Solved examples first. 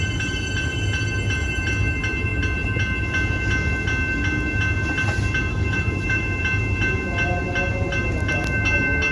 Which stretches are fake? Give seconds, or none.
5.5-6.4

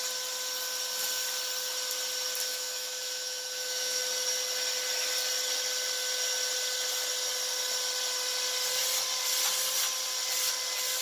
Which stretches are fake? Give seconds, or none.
2.5-4.0

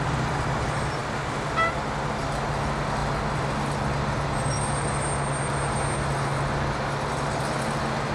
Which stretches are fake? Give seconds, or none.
none

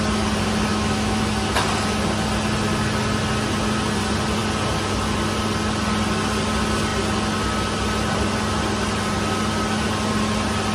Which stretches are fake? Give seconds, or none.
0.7-1.2

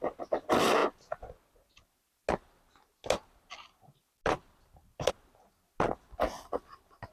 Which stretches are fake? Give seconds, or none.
none